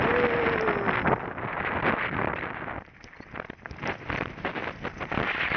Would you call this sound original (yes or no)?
yes